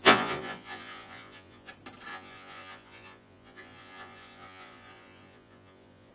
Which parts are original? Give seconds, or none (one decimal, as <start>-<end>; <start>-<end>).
1.7-2.1